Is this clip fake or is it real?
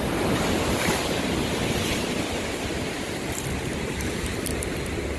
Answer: real